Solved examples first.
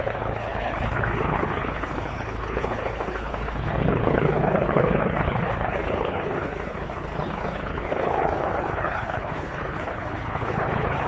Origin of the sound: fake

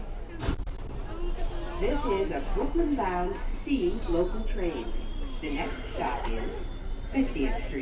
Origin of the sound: real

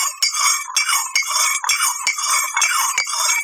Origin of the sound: real